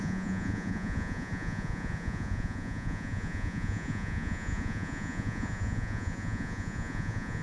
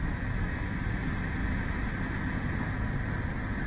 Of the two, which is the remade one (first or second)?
first